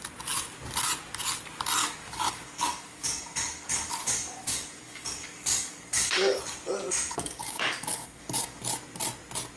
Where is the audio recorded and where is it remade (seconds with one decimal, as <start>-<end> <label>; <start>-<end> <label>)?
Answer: 0.0-1.8 recorded; 1.8-6.4 remade; 6.4-7.1 recorded; 7.1-8.6 remade; 8.6-9.6 recorded